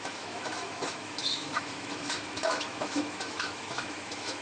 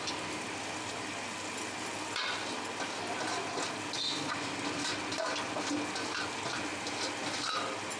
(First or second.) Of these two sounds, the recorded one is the second